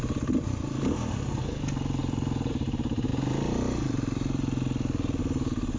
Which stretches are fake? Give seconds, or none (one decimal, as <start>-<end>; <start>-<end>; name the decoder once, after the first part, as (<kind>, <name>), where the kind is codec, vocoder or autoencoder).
0.0-3.1 (vocoder, BigVGAN v2); 5.2-5.8